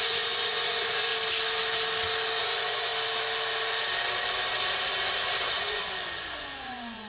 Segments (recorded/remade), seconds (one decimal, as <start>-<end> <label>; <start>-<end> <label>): 0.0-1.1 remade; 1.1-2.4 recorded; 2.4-2.9 remade; 2.9-5.5 recorded; 5.5-7.1 remade